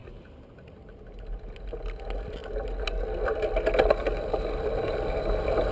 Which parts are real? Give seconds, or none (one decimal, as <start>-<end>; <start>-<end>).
0.0-5.7